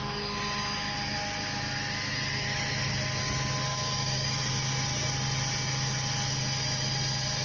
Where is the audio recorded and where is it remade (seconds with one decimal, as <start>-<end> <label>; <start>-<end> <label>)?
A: 0.0-3.7 recorded; 3.7-4.5 remade; 4.5-7.4 recorded